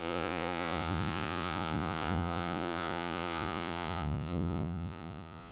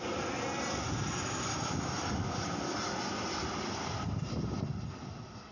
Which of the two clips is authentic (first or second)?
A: second